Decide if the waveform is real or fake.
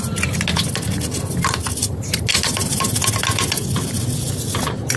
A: real